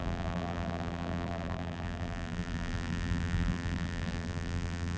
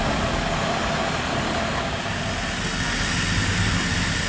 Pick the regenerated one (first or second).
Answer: first